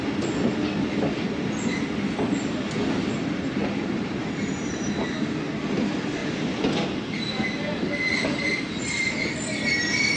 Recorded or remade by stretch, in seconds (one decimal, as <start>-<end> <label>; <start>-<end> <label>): 0.0-3.6 recorded; 3.6-5.2 remade; 5.2-10.2 recorded